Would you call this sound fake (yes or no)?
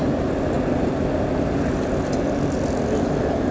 no